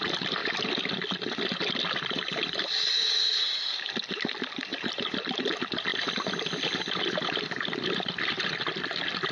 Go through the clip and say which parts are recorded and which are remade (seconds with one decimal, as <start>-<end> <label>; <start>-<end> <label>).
0.0-9.3 recorded